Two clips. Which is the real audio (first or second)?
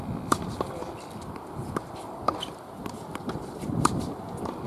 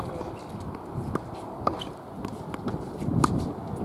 second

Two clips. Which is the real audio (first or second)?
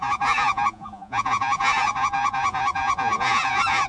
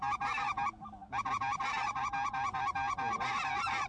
second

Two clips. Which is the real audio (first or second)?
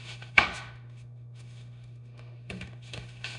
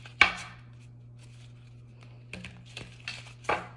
second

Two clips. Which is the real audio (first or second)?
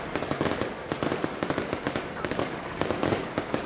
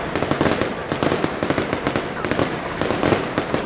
second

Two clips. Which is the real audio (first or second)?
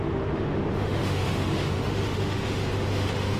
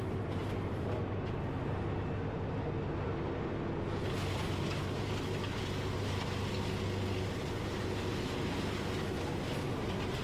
second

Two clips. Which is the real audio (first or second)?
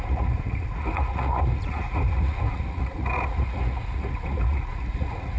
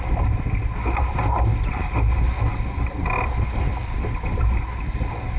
second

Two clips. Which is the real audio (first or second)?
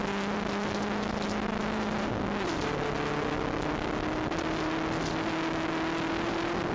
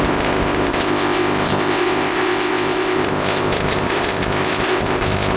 first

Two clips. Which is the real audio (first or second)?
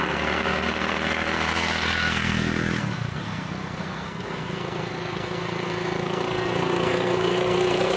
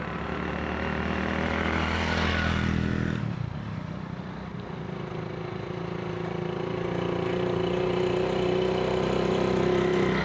second